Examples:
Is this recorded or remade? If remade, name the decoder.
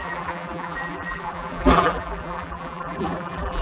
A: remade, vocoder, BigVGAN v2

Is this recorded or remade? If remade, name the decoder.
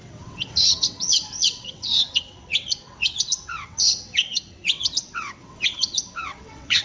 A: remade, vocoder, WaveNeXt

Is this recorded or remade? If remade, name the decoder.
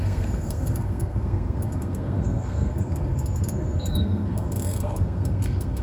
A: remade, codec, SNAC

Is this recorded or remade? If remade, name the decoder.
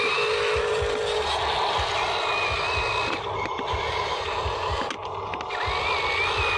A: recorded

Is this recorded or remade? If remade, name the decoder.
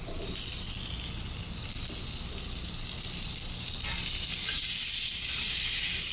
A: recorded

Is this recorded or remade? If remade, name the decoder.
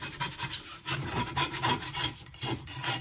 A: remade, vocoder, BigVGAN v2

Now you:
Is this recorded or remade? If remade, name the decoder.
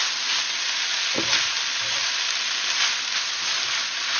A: recorded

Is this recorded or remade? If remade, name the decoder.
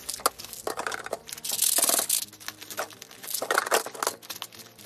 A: recorded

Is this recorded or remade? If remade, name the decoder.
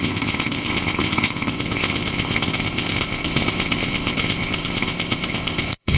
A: remade, codec, ZipCodec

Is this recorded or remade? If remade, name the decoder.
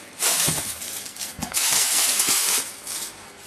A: remade, codec, SNAC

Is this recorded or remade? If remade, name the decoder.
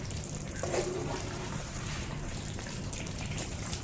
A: remade, vocoder, BigVGAN v2